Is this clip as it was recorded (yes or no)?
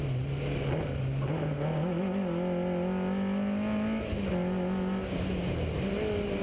yes